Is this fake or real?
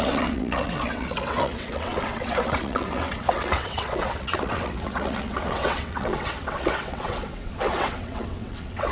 fake